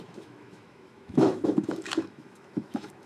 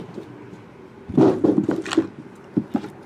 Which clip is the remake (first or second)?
first